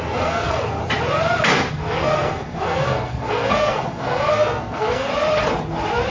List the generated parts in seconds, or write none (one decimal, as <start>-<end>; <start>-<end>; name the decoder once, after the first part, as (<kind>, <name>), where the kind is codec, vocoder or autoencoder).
0.0-0.8 (codec, SNAC); 1.7-5.1